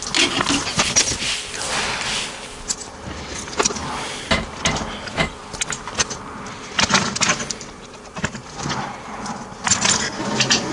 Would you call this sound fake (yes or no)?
no